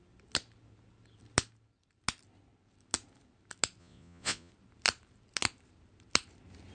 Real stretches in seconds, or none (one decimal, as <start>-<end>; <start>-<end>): 0.0-3.8; 4.5-6.7